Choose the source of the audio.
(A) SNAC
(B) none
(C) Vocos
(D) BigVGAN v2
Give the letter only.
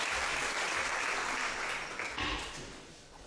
B